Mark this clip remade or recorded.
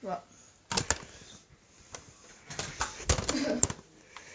recorded